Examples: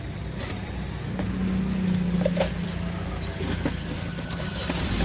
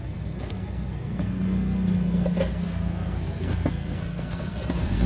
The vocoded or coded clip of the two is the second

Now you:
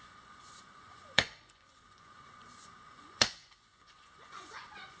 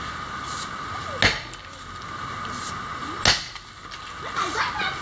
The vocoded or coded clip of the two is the first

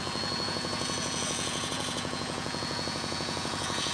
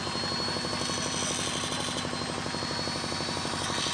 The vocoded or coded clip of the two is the first